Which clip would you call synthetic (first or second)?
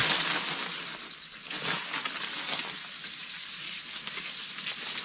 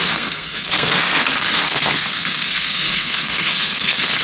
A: second